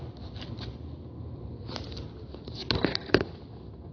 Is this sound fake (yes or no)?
no